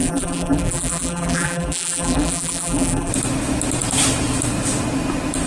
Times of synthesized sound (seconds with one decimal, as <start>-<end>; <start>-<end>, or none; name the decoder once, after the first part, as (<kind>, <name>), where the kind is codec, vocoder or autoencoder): 0.0-3.1 (vocoder, BigVGAN v2)